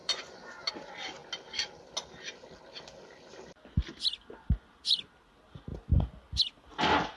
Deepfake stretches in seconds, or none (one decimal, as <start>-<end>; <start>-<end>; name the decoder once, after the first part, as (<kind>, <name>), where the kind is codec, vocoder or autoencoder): 0.0-0.7 (vocoder, Vocos)